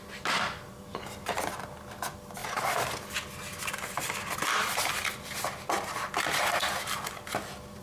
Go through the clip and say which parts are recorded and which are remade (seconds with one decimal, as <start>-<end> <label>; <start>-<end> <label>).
0.0-7.8 recorded